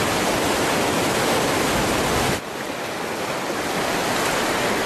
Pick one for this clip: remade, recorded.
recorded